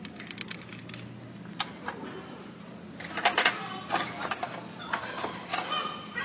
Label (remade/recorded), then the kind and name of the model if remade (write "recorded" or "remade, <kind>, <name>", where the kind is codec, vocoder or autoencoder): recorded